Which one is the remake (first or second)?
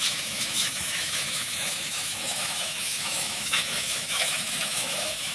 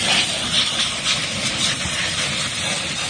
first